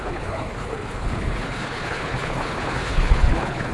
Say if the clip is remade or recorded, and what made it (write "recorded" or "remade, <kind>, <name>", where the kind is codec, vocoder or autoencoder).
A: remade, codec, HILCodec